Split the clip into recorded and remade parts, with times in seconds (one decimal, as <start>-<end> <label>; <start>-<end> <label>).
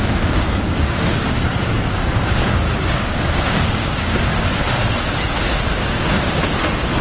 0.0-4.3 remade; 4.3-5.9 recorded; 5.9-7.0 remade